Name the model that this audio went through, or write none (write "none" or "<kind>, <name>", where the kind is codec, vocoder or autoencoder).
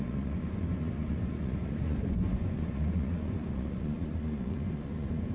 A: vocoder, Vocos